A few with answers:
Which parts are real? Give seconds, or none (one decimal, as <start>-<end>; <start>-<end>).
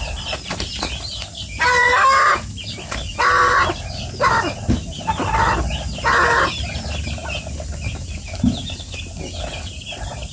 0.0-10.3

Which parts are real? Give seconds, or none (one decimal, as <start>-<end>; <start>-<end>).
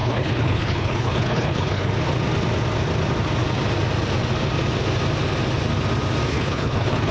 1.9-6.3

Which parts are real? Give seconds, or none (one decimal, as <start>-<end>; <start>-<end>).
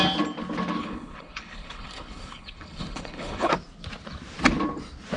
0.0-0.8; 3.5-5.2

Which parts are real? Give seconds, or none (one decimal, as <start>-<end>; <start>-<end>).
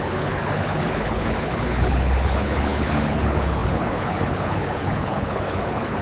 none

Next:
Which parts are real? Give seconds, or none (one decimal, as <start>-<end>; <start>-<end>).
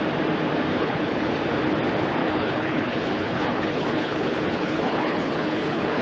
0.0-0.7; 1.3-2.2